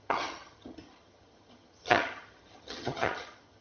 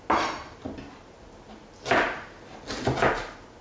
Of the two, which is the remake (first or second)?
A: first